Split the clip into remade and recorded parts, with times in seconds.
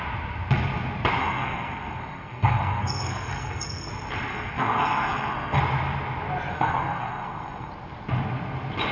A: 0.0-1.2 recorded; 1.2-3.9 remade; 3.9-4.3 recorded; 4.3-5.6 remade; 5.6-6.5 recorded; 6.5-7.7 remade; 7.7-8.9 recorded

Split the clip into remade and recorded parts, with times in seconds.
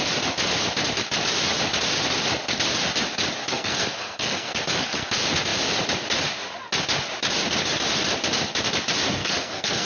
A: 0.0-3.4 recorded; 3.4-5.1 remade; 5.1-9.2 recorded; 9.2-9.9 remade